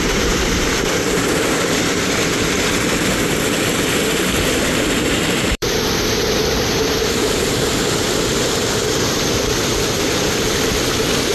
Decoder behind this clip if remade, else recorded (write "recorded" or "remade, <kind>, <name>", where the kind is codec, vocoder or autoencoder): remade, vocoder, BigVGAN v2